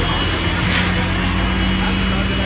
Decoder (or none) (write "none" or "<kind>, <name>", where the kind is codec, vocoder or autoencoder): none